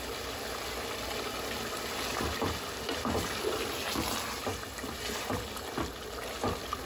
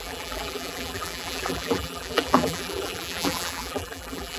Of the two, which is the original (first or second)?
first